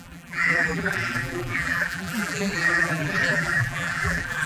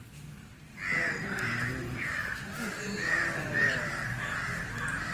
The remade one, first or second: first